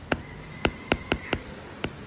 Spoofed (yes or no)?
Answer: no